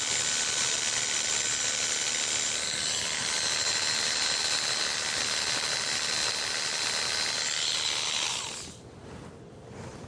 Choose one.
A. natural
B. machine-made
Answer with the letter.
B